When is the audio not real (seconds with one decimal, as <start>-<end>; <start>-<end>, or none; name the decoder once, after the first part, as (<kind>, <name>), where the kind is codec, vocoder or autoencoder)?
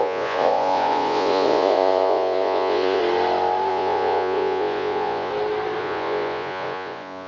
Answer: 0.0-3.0 (vocoder, Vocos); 3.7-5.3; 5.8-7.3